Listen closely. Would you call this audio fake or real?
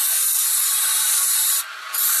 real